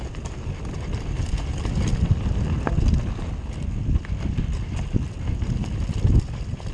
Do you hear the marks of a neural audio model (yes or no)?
no